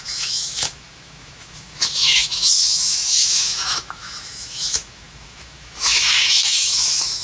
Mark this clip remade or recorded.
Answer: remade